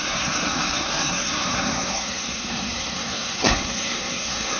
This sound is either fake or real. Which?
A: fake